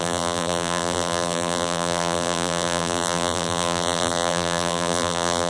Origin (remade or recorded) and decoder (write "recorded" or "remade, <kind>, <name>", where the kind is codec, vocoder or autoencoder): remade, vocoder, BigVGAN v2